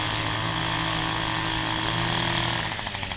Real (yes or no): yes